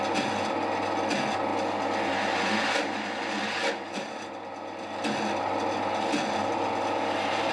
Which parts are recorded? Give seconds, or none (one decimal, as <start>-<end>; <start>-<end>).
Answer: 0.0-7.5